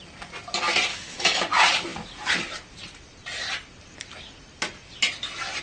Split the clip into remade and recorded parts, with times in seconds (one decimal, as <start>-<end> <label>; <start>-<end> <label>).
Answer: 0.0-0.9 recorded; 0.9-1.4 remade; 1.4-5.6 recorded